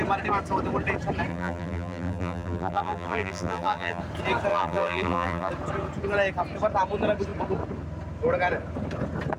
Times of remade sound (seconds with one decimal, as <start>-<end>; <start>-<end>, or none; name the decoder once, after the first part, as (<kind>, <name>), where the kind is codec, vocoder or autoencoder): 1.3-4.0 (vocoder, BigVGAN v2); 4.5-5.5